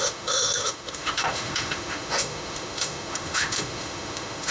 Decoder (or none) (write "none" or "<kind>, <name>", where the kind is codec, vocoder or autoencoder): autoencoder, DAC-VAE